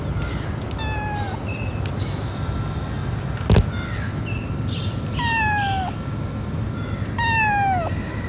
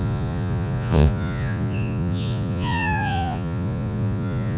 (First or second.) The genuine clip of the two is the first